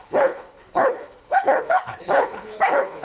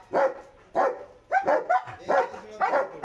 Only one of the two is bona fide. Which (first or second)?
second